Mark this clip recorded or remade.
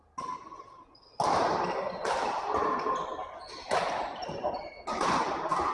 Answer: recorded